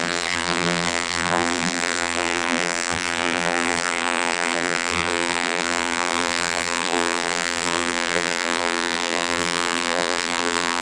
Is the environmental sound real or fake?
fake